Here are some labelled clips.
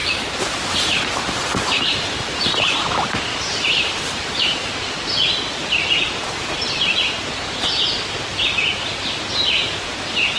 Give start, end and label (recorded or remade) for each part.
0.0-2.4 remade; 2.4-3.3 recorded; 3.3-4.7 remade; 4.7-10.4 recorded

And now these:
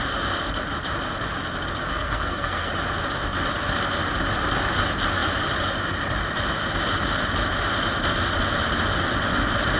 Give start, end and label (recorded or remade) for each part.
0.0-1.9 recorded; 1.9-2.7 remade; 2.7-9.8 recorded

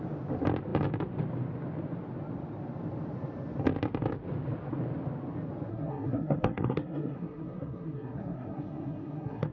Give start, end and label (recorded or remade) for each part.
0.0-5.7 recorded; 5.7-9.5 remade

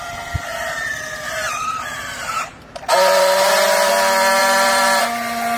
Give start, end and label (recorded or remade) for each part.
0.0-0.5 recorded; 0.5-3.9 remade; 3.9-4.4 recorded; 4.4-5.0 remade; 5.0-5.6 recorded